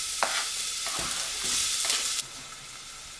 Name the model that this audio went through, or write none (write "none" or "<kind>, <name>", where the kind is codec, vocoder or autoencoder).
none